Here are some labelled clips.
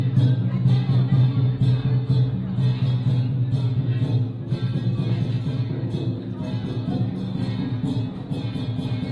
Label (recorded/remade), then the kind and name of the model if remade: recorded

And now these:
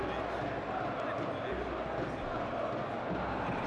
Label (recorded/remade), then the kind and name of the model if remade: recorded